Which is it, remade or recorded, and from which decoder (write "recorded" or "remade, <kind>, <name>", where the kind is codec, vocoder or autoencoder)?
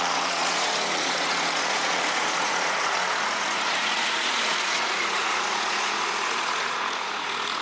remade, vocoder, Vocos